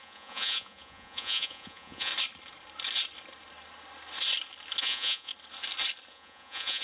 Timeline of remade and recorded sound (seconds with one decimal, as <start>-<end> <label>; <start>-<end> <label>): 0.0-2.1 remade; 2.1-4.8 recorded; 4.8-5.3 remade; 5.3-6.1 recorded; 6.1-6.8 remade